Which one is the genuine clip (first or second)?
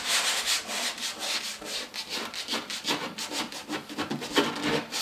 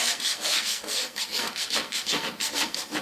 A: first